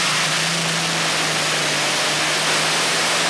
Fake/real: real